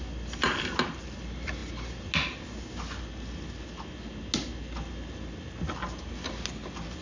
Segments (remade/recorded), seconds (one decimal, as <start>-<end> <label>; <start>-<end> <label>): 0.0-7.0 recorded

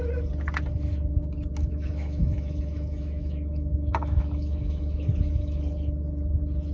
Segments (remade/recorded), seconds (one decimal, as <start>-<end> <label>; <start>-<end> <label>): 0.0-1.6 recorded; 1.6-5.6 remade; 5.6-6.7 recorded

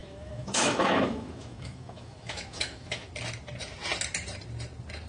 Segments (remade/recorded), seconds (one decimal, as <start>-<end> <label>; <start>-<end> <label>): 0.0-3.1 remade; 3.1-5.1 recorded

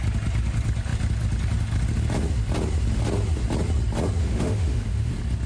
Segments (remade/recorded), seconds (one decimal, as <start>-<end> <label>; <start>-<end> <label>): 0.0-4.2 recorded; 4.2-5.1 remade; 5.1-5.5 recorded

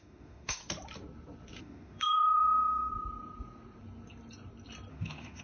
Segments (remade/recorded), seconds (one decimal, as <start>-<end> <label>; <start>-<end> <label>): 0.0-0.6 remade; 0.6-1.6 recorded; 1.6-2.9 remade; 2.9-4.9 recorded; 4.9-5.4 remade

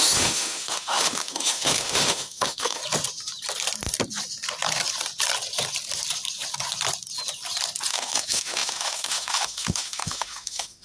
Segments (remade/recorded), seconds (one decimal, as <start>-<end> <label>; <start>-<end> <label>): 0.0-2.8 remade; 2.8-7.9 recorded; 7.9-10.8 remade